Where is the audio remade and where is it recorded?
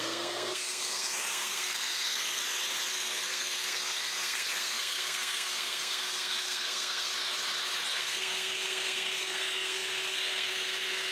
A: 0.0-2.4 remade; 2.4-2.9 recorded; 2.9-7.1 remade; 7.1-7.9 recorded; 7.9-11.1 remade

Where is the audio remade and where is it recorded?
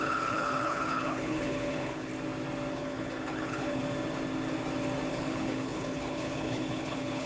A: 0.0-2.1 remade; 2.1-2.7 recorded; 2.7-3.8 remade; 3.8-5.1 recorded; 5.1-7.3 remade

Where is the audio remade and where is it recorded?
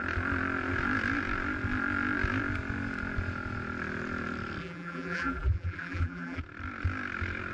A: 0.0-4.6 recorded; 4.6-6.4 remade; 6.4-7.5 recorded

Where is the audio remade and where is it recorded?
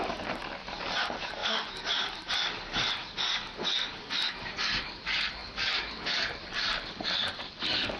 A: 0.0-8.0 remade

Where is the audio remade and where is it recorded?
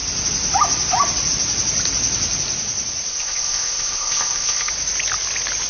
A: 0.0-3.1 recorded; 3.1-4.7 remade; 4.7-5.7 recorded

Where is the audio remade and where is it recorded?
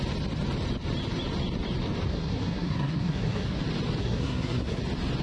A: 0.0-2.1 recorded; 2.1-3.6 remade; 3.6-4.0 recorded; 4.0-4.8 remade; 4.8-5.2 recorded